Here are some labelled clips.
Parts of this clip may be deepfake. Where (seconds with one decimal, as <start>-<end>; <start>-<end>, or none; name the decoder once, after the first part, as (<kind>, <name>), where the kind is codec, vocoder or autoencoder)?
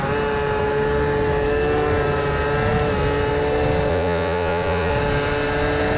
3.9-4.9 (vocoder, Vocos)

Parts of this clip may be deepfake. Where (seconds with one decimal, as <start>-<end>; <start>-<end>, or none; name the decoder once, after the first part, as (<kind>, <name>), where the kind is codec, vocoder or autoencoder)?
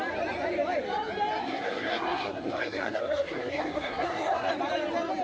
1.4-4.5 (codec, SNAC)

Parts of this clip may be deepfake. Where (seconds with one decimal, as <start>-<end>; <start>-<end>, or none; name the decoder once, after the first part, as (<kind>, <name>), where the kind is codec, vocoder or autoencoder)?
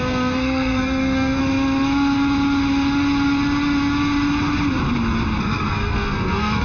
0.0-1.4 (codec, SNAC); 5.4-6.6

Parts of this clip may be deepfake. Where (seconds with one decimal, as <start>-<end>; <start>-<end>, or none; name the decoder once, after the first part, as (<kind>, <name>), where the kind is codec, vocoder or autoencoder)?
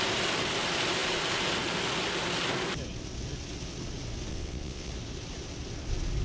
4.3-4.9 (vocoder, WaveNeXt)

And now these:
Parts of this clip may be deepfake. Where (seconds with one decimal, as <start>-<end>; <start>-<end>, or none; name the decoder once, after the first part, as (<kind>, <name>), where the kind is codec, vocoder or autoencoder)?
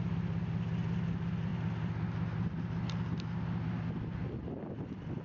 none